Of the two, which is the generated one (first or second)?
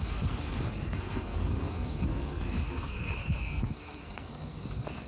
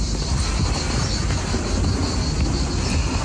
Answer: first